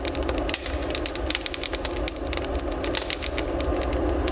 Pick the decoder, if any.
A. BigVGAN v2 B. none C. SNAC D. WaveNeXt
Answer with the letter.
B